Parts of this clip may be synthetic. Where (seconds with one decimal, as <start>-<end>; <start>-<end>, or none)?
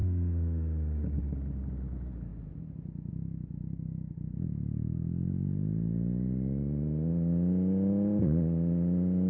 0.0-1.2